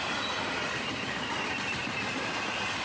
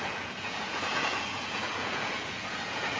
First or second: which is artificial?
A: second